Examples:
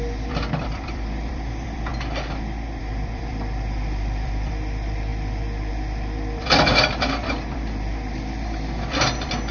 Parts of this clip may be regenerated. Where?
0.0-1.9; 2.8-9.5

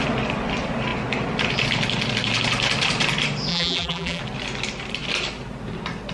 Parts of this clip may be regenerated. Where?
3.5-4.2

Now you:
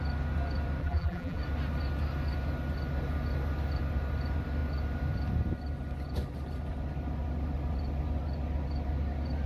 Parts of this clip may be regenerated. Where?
0.8-1.4

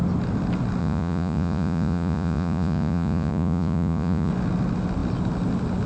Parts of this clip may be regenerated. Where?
0.8-4.3

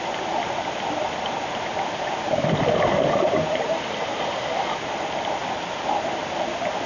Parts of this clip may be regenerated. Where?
none

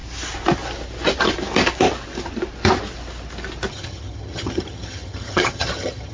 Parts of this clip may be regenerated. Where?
3.7-6.1